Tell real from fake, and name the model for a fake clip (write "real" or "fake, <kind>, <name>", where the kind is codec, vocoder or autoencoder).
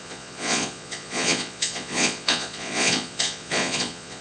fake, vocoder, Vocos